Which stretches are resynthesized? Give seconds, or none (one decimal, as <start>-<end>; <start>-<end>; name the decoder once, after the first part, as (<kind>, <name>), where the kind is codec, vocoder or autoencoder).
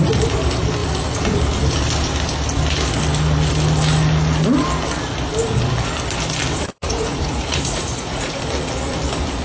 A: 6.5-8.4 (vocoder, Vocos)